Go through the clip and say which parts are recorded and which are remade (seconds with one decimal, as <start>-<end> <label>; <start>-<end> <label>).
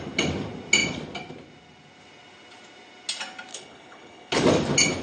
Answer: 0.0-3.5 recorded; 3.5-4.3 remade; 4.3-5.0 recorded